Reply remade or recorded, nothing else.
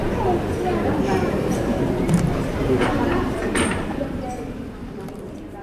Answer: remade